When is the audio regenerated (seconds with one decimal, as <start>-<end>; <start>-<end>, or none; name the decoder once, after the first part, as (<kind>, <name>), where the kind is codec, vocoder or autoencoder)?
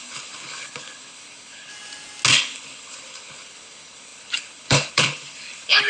0.0-1.7 (codec, HILCodec); 2.3-5.9